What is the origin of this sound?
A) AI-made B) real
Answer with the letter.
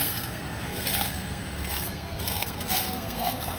A